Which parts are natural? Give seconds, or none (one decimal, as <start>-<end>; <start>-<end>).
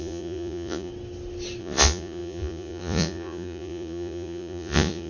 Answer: 0.9-1.6